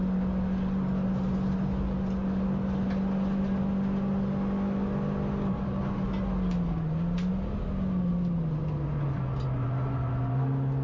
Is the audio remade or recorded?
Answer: recorded